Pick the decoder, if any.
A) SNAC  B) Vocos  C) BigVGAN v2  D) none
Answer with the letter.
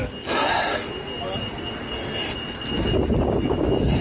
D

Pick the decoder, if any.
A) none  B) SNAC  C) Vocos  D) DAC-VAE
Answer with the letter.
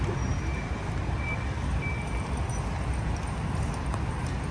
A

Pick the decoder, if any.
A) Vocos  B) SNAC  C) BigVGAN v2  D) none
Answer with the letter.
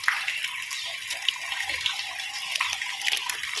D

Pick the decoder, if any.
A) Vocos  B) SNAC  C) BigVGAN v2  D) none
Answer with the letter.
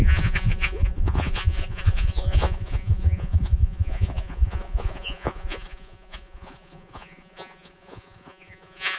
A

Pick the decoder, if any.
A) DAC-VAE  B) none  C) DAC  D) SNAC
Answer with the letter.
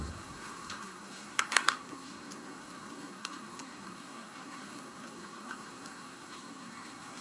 D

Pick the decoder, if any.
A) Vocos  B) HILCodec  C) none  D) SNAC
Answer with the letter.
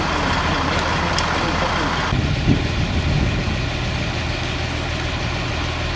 C